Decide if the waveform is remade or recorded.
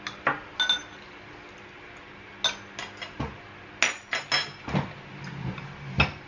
recorded